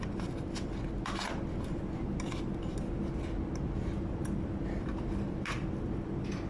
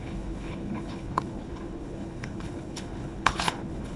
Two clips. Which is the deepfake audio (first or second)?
second